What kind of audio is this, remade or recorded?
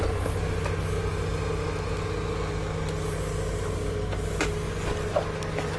recorded